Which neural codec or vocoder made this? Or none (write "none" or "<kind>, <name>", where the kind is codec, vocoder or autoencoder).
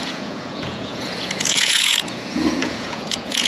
vocoder, Vocos